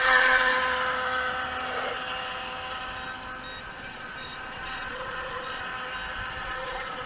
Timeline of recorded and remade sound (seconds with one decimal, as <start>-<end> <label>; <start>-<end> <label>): 0.0-0.5 remade; 0.5-3.6 recorded; 3.6-5.7 remade; 5.7-6.4 recorded; 6.4-7.1 remade